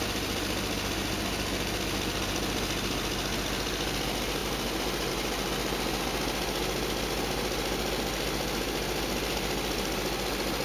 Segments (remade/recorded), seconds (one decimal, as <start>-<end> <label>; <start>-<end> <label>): 0.0-10.6 recorded